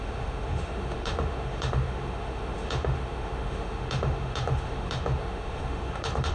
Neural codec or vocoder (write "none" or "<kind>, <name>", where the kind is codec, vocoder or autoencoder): autoencoder, DAC-VAE